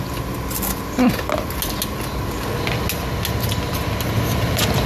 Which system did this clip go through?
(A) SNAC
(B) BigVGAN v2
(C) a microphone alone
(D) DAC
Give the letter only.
C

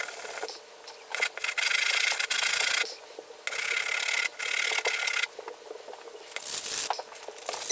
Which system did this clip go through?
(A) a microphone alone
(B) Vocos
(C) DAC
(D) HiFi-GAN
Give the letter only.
A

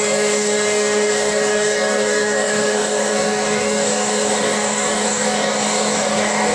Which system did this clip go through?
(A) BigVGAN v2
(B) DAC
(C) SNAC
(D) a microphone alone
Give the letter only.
B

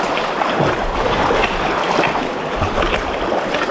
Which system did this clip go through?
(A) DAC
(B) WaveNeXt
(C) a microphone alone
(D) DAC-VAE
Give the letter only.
C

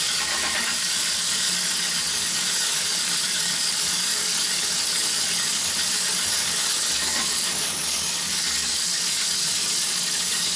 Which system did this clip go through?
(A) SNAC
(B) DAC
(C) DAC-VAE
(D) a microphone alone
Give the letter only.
B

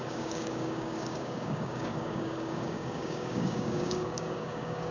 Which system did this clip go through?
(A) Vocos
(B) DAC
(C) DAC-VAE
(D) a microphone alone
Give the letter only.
B